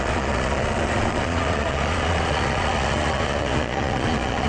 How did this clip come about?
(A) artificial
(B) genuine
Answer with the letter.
A